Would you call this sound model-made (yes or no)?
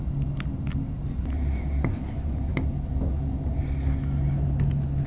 no